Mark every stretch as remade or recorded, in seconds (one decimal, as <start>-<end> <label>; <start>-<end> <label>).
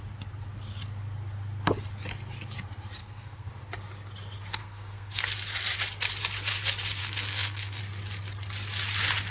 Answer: 0.0-3.0 recorded; 3.0-3.5 remade; 3.5-4.6 recorded; 4.6-5.2 remade; 5.2-7.0 recorded; 7.0-7.8 remade; 7.8-9.3 recorded